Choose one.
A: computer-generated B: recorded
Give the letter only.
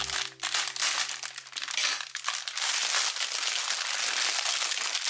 B